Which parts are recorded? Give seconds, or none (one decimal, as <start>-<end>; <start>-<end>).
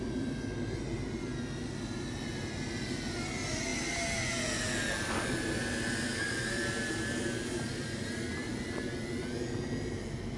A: 0.0-10.4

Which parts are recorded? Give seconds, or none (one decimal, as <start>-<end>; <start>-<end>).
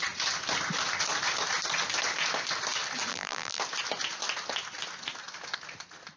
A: 0.0-3.1; 3.6-6.2